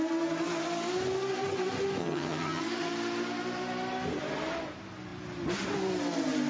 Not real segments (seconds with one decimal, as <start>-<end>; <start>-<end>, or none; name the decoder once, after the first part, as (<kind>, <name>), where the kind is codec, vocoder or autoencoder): 2.0-2.6 (vocoder, HiFi-GAN)